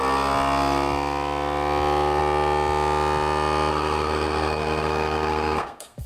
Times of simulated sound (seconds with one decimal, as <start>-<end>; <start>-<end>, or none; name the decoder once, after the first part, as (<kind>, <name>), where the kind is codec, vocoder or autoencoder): 3.7-6.1 (codec, SNAC)